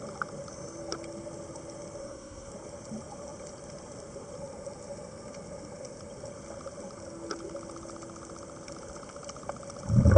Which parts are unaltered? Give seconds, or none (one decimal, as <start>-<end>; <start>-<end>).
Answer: 0.0-2.0; 2.5-10.2